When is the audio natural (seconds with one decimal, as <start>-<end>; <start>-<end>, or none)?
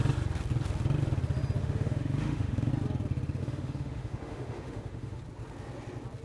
0.0-1.6; 2.7-3.4; 5.2-6.2